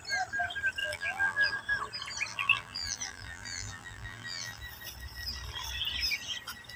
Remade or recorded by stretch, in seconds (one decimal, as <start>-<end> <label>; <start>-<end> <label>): 0.0-0.8 recorded; 0.8-1.5 remade; 1.5-2.3 recorded; 2.3-4.6 remade; 4.6-6.8 recorded